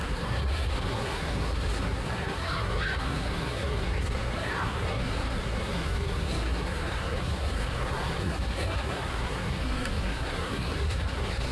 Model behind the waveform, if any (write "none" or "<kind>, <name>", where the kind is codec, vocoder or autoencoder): codec, SNAC